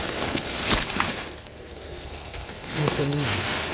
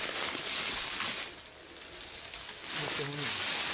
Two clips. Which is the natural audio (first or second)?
second